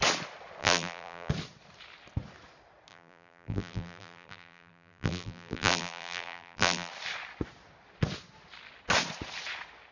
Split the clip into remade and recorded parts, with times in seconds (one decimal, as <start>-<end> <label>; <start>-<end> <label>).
0.0-0.6 recorded; 0.6-1.3 remade; 1.3-2.9 recorded; 2.9-6.9 remade; 6.9-9.9 recorded